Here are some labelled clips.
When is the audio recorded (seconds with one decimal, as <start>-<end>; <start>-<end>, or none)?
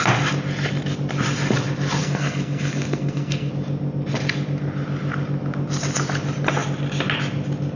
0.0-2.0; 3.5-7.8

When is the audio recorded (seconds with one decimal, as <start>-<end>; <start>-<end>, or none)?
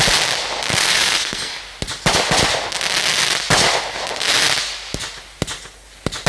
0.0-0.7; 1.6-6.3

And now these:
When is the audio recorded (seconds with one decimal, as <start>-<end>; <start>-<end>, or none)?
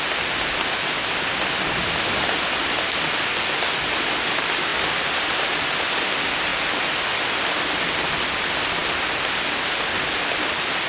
0.0-10.9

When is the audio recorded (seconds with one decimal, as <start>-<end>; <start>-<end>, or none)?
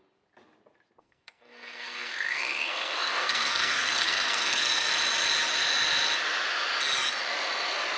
0.0-1.0; 4.9-8.0